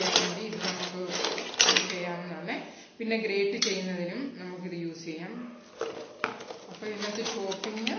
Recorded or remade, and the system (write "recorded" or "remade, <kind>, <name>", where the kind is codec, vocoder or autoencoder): recorded